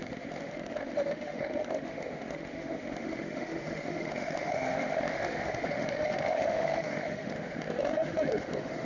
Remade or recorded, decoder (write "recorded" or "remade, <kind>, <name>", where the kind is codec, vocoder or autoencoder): remade, autoencoder, DAC-VAE